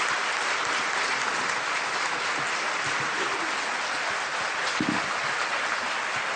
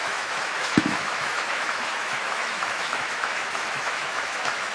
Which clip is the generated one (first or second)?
second